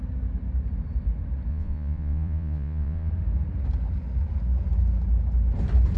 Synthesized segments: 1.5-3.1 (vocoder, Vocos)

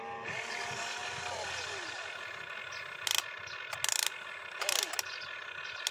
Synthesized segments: none

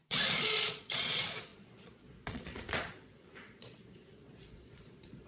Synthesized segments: 0.0-5.3 (vocoder, Vocos)

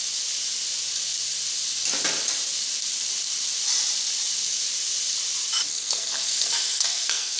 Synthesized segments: 5.7-7.4 (codec, SNAC)

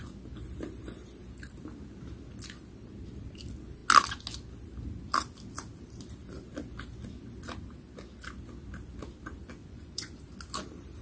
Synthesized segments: 9.6-10.2 (vocoder, Vocos)

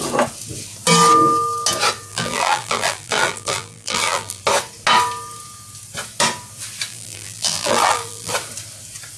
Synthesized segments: 2.1-4.4 (vocoder, BigVGAN v2); 6.9-8.3

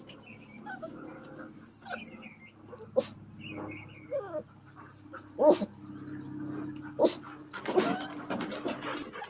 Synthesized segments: none